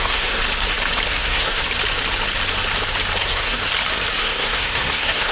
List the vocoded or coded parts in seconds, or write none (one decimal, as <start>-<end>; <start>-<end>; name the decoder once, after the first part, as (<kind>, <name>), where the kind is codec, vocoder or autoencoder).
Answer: 0.0-0.4 (codec, SNAC); 1.1-1.6; 3.2-3.6; 4.2-5.3